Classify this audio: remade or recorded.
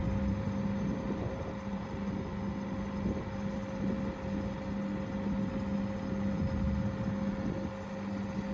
recorded